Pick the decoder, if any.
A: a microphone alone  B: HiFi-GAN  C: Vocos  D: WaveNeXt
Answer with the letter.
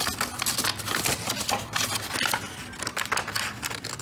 A